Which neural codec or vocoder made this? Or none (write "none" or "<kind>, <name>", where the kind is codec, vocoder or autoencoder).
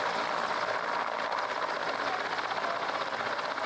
none